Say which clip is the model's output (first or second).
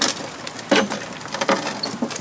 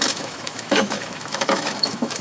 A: second